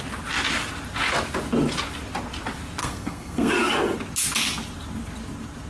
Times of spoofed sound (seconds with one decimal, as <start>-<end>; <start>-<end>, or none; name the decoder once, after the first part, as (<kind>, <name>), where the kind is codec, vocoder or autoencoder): 2.8-3.5 (codec, SNAC)